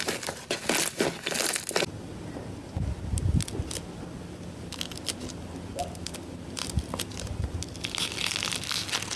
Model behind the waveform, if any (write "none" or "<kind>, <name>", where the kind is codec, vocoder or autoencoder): none